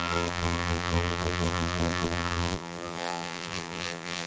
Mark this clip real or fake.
fake